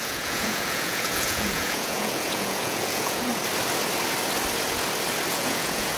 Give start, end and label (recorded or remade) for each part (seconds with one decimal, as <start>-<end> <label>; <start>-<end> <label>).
0.0-3.3 remade; 3.3-5.3 recorded; 5.3-6.0 remade

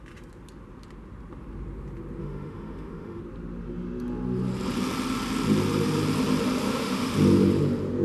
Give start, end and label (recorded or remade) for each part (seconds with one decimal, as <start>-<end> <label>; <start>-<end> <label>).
0.0-2.2 recorded; 2.2-3.2 remade; 3.2-6.6 recorded; 6.6-7.1 remade; 7.1-8.0 recorded

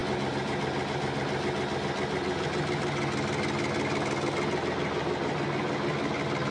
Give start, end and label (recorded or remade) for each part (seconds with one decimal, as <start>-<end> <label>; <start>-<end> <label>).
0.0-6.5 recorded

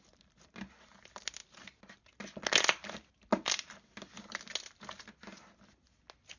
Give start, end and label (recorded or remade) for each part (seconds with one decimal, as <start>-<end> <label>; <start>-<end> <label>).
0.0-6.4 recorded